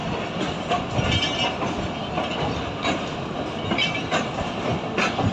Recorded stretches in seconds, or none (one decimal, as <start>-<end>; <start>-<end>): 0.0-5.3